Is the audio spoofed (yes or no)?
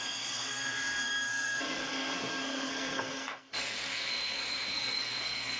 yes